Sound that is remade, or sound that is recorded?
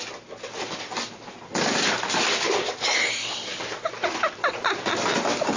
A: recorded